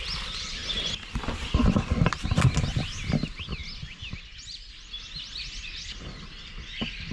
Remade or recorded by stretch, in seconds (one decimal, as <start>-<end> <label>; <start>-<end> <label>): 0.0-7.1 recorded